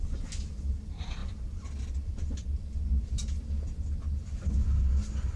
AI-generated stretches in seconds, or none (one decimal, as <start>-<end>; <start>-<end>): none